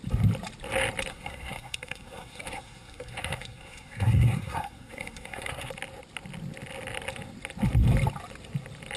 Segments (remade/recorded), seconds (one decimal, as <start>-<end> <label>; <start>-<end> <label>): 0.0-1.1 recorded; 1.1-5.7 remade; 5.7-9.0 recorded